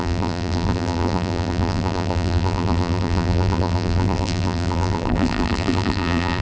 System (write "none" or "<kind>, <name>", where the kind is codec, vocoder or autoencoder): vocoder, BigVGAN v2